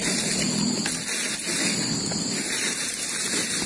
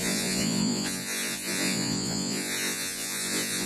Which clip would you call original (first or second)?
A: first